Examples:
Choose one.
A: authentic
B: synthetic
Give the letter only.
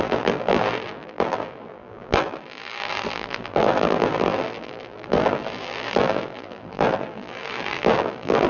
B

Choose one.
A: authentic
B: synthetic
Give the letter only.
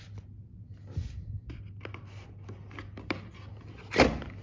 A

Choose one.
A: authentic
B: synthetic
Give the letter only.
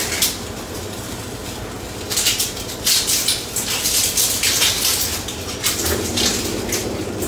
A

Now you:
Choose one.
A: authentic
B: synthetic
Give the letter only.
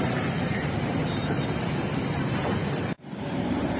B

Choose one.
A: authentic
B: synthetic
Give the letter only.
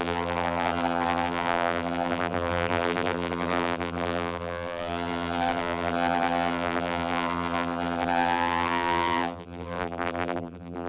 B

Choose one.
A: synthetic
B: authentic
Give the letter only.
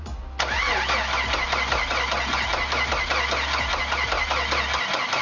B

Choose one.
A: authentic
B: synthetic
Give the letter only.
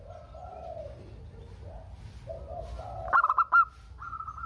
A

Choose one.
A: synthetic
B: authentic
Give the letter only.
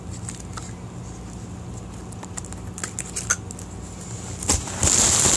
B